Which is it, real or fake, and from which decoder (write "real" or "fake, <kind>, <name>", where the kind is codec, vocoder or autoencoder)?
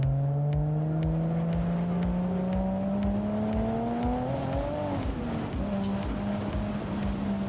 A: real